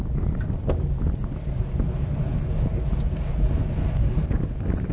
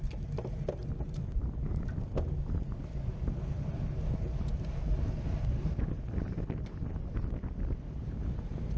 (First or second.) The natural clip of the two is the first